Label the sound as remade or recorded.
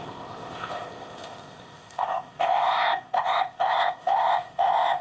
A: remade